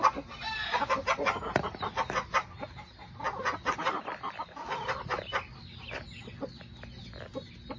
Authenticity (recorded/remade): recorded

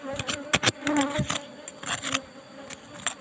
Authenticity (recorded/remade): recorded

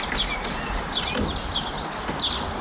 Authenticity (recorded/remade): recorded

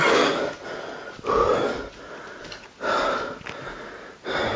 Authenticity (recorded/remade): recorded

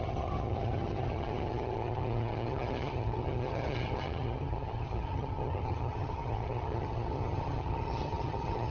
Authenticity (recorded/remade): remade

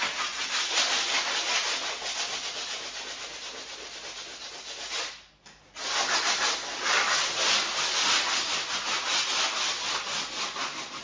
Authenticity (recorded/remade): recorded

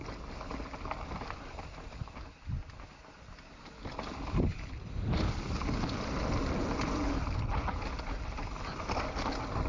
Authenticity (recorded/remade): recorded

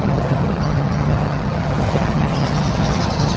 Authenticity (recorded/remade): remade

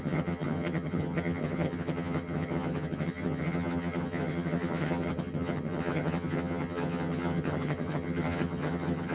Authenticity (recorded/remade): remade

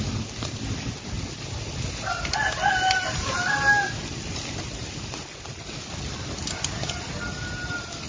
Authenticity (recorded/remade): recorded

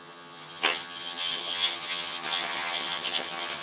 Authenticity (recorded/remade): remade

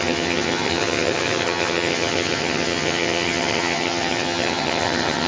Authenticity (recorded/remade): remade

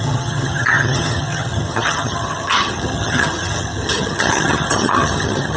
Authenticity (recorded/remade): remade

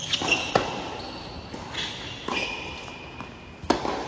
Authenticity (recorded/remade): recorded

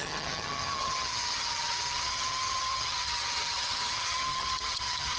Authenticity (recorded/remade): remade